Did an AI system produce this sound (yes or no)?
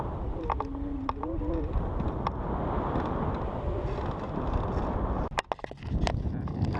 no